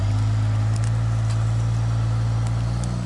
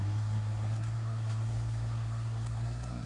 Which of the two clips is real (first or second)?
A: first